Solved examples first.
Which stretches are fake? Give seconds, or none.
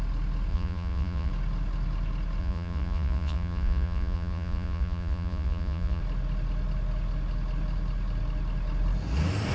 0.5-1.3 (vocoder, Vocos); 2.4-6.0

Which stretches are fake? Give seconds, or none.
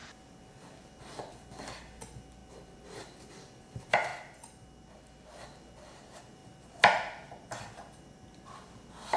0.0-2.4 (vocoder, BigVGAN v2); 3.3-6.4; 8.3-9.2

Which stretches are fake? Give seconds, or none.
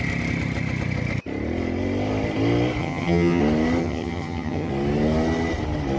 2.8-3.4 (vocoder, HiFi-GAN); 3.8-4.7